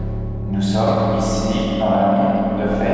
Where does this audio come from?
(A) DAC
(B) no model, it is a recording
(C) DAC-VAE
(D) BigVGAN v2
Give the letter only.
B